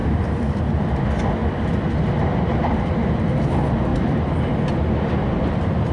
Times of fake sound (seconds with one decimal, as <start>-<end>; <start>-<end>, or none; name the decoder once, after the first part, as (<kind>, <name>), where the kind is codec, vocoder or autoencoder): 0.0-0.6 (vocoder, BigVGAN v2)